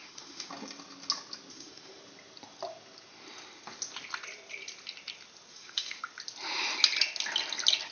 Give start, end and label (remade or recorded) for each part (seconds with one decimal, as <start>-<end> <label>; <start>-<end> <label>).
0.0-0.5 remade; 0.5-1.5 recorded; 1.5-2.0 remade; 2.0-5.5 recorded; 5.5-6.0 remade; 6.0-7.9 recorded